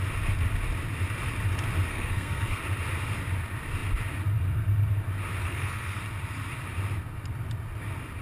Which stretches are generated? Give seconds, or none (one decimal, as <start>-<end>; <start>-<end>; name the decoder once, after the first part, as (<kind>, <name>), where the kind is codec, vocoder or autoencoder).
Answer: 1.9-2.6 (codec, SNAC); 5.4-6.0

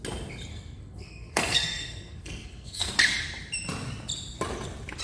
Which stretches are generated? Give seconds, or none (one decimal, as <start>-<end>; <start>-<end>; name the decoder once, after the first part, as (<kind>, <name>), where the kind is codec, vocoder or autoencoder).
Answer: 0.5-2.9 (codec, SNAC)

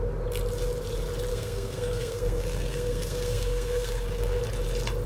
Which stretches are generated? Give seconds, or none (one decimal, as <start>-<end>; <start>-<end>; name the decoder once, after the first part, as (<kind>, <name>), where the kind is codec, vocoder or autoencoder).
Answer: 1.3-4.4 (codec, SNAC)

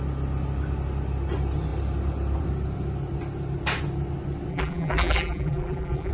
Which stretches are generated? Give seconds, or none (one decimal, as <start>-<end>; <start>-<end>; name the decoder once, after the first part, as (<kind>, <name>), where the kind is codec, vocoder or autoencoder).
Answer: 4.5-6.1 (vocoder, BigVGAN v2)

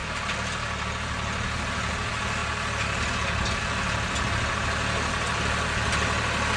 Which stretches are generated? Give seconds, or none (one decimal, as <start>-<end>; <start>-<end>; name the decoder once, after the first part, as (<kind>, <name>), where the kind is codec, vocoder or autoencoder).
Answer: none

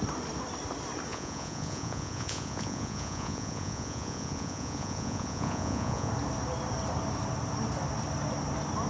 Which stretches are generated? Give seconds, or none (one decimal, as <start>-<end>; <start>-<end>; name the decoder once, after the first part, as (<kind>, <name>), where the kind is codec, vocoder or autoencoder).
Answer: 1.1-6.1 (vocoder, Vocos)

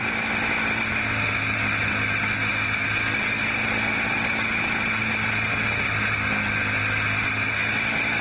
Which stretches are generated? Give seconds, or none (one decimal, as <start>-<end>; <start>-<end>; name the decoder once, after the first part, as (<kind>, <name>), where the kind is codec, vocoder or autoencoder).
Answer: none

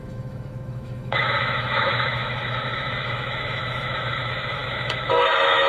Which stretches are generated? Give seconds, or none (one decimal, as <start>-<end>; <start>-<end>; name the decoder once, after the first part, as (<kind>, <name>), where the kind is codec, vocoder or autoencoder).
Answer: 0.0-5.7 (autoencoder, DAC-VAE)